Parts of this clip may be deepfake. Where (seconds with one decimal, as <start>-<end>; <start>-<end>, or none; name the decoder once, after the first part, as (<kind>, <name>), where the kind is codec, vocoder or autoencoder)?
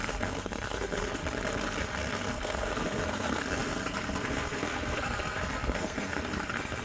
0.0-1.2 (codec, SNAC); 1.8-6.8